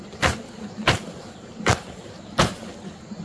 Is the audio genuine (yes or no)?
yes